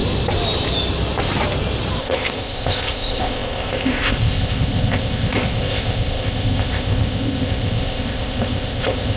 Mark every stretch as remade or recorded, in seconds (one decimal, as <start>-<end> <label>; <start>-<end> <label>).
0.0-2.0 recorded; 2.0-9.2 remade